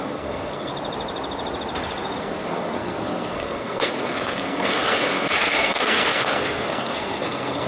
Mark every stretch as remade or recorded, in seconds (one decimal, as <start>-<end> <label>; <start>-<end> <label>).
0.0-0.7 remade; 0.7-2.2 recorded; 2.2-7.7 remade